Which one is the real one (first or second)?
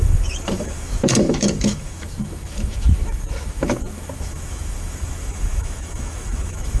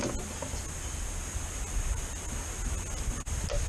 second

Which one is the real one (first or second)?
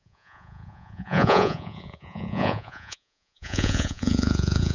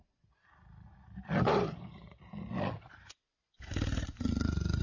second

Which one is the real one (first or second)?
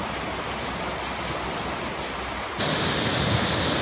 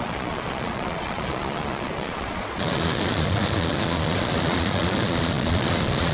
first